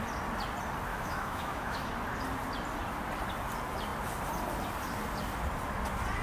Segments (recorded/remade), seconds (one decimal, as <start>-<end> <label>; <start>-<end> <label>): 0.0-0.9 recorded; 0.9-1.9 remade; 1.9-6.2 recorded